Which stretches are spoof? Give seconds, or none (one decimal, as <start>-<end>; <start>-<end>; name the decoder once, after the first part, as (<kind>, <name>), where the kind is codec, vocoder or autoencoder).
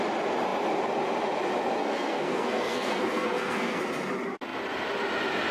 1.8-3.8 (codec, SNAC)